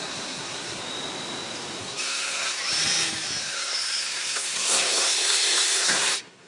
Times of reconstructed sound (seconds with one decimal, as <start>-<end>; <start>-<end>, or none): 0.0-0.8; 1.8-2.6; 3.4-6.5